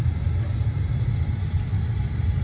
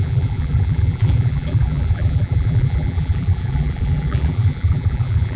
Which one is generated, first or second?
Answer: second